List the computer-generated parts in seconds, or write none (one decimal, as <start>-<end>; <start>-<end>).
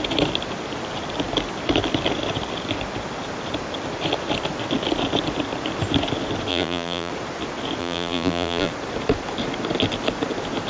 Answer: 6.5-7.1; 7.8-8.7